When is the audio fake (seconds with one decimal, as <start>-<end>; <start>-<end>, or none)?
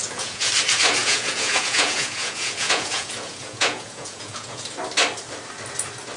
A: 0.0-0.5; 1.0-4.7